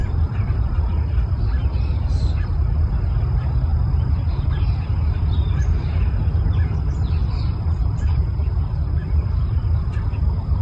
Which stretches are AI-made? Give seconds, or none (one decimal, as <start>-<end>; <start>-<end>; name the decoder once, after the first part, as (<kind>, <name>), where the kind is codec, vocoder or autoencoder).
0.0-1.4 (vocoder, BigVGAN v2); 6.6-8.1; 9.0-10.6